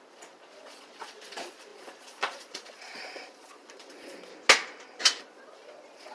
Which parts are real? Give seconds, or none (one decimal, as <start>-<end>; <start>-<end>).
4.3-5.2